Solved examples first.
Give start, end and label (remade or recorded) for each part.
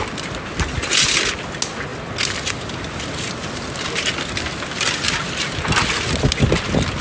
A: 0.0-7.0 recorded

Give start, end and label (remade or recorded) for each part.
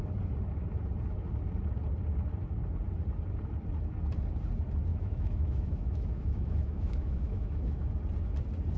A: 0.0-4.9 recorded; 4.9-7.9 remade; 7.9-8.8 recorded